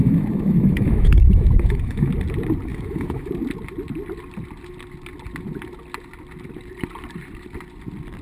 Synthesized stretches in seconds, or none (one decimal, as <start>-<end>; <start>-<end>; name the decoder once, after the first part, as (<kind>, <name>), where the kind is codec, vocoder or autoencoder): 0.0-2.1 (autoencoder, DAC-VAE); 2.7-3.3